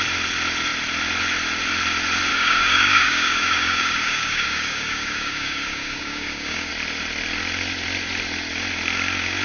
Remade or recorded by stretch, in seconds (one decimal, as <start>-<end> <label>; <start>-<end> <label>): 0.0-2.3 recorded; 2.3-6.7 remade; 6.7-9.4 recorded